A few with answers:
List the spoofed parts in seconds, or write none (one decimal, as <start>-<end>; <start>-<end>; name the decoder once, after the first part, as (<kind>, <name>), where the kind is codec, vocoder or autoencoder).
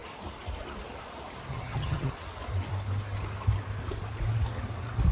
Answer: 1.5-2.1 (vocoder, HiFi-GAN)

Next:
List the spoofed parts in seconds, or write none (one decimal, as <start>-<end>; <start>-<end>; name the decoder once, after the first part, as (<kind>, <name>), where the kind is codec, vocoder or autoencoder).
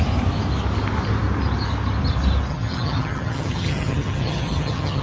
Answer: 2.5-5.0 (vocoder, HiFi-GAN)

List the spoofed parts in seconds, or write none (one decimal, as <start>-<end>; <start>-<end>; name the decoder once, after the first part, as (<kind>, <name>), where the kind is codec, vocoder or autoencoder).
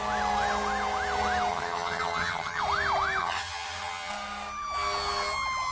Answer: 1.5-2.6 (vocoder, HiFi-GAN); 3.2-4.1